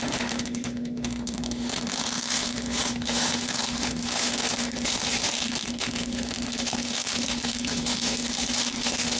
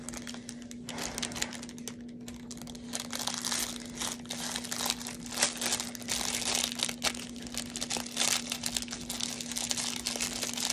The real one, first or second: second